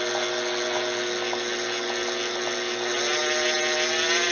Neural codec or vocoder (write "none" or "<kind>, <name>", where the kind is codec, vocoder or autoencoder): none